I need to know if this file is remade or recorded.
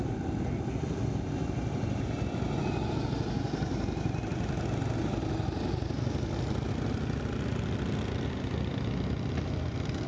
recorded